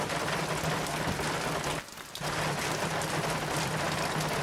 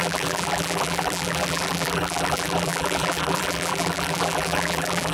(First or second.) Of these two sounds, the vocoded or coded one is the second